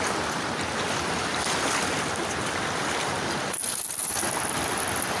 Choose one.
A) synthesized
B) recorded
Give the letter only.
B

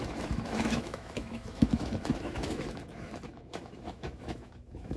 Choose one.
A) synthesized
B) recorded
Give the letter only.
A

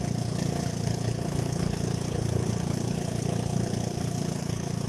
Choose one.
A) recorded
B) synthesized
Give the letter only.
B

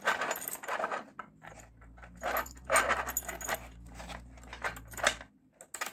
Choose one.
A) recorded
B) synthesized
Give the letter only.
A